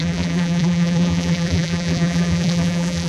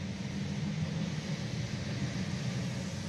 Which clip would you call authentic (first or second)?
second